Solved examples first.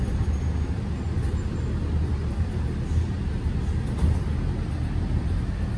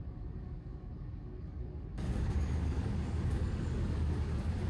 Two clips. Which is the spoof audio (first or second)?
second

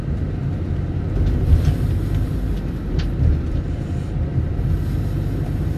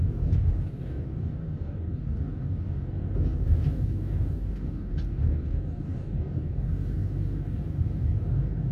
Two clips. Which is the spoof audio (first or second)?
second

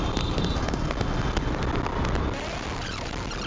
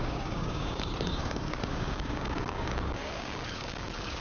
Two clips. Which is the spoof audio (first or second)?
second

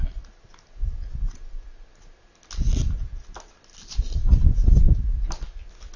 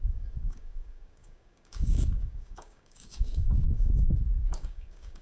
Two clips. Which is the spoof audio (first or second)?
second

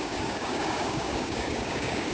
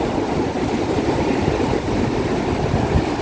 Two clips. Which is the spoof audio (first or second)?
first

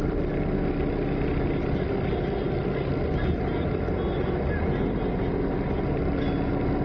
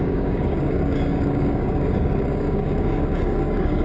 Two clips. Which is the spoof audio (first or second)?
second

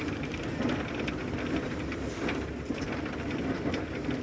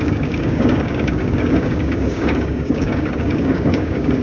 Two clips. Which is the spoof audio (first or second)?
second